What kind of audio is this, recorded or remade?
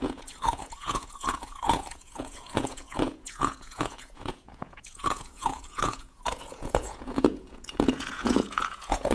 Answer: remade